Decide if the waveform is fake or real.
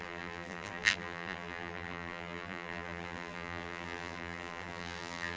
fake